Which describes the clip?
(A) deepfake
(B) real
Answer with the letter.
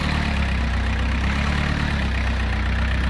B